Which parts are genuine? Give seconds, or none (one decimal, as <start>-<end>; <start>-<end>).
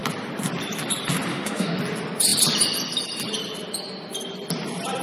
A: 0.0-1.3; 1.8-5.0